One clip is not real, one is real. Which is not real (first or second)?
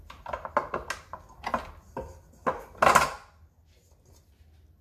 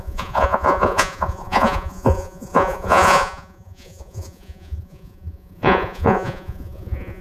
second